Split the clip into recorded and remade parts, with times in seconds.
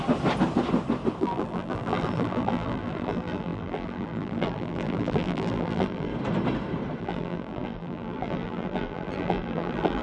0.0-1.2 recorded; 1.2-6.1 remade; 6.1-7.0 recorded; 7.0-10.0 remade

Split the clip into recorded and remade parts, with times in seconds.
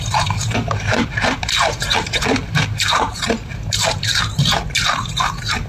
0.0-4.1 remade; 4.1-4.8 recorded; 4.8-5.7 remade